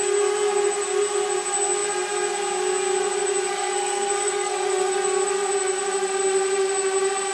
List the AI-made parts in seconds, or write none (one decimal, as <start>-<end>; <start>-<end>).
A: 3.5-4.9